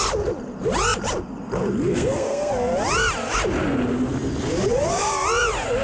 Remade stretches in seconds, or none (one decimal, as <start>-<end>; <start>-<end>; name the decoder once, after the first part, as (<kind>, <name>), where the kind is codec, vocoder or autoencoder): 1.9-2.5 (codec, SNAC)

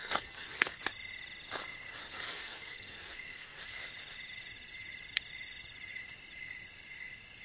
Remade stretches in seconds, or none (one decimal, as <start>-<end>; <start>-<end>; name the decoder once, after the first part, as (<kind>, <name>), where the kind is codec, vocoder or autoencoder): 0.0-0.8 (codec, SNAC); 2.0-3.6

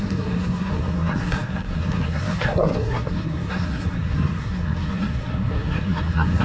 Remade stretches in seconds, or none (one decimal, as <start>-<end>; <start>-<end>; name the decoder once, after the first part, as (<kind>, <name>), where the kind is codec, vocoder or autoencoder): 0.0-6.4 (codec, SNAC)

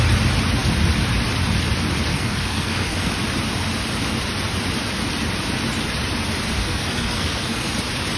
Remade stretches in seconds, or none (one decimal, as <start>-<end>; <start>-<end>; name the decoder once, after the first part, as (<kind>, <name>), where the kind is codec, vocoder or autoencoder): 2.1-3.1 (codec, SNAC); 6.6-7.7

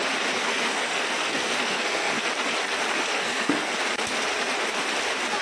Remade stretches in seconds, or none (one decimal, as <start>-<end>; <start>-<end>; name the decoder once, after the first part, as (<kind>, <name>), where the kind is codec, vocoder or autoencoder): 0.4-2.3 (codec, SNAC); 3.1-3.7

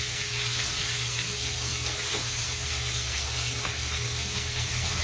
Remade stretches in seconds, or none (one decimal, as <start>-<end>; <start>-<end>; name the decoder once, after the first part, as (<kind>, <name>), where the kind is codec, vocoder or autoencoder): 0.0-5.0 (codec, SNAC)

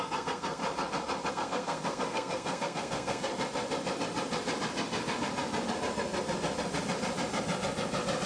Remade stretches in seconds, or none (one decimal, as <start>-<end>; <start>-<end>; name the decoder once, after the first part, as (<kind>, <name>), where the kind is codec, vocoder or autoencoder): 0.0-0.6 (codec, SNAC); 1.3-3.3

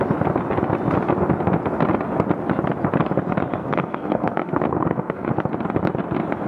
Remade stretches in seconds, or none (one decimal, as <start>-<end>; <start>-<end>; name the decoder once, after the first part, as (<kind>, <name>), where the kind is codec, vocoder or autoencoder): 3.6-5.3 (codec, SNAC)